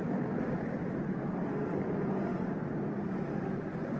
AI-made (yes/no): no